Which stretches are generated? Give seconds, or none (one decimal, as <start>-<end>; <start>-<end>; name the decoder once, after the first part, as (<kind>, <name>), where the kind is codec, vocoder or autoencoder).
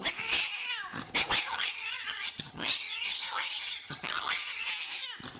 1.5-4.7 (vocoder, HiFi-GAN)